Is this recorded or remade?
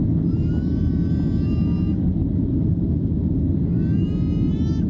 recorded